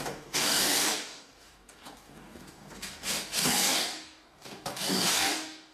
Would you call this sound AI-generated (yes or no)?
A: yes